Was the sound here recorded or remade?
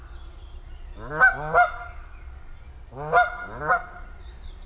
recorded